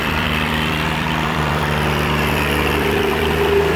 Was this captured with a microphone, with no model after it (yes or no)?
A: no